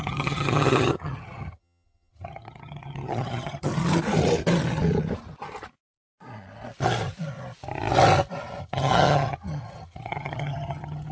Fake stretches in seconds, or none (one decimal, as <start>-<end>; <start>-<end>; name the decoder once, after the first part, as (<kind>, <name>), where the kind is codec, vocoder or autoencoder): 0.0-3.7 (vocoder, HiFi-GAN); 8.6-11.1